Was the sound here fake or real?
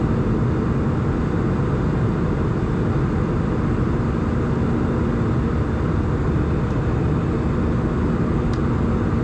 real